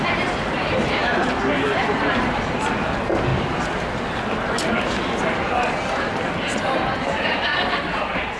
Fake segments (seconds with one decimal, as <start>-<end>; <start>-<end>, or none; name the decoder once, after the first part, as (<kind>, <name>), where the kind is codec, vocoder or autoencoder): 1.0-2.0 (vocoder, BigVGAN v2); 3.3-4.1